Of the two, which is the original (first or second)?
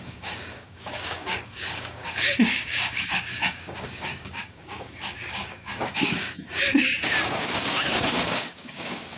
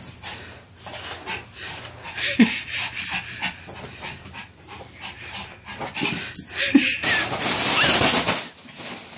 second